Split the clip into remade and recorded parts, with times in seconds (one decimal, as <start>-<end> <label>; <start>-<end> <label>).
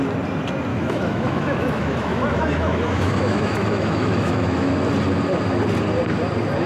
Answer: 0.0-0.7 recorded; 0.7-4.7 remade; 4.7-6.7 recorded